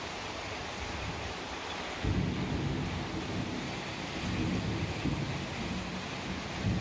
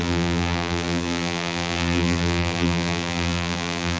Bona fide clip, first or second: first